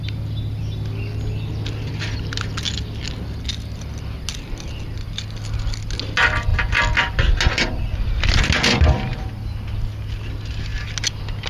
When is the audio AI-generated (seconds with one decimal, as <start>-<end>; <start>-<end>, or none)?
none